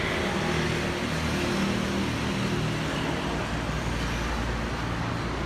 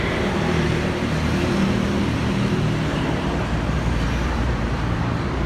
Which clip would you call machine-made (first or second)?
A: second